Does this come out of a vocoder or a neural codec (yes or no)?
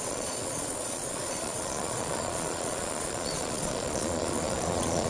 yes